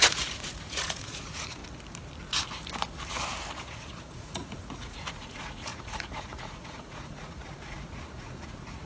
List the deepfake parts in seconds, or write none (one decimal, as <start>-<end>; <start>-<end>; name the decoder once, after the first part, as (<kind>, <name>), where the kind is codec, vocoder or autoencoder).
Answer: 0.0-1.6 (vocoder, Vocos); 3.5-8.9